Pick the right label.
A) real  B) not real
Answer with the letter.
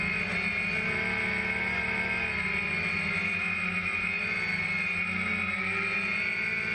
A